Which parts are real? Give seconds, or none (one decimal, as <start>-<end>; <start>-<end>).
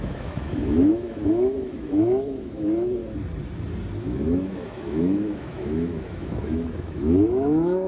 3.0-4.0